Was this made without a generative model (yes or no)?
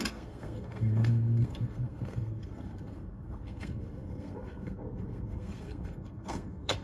no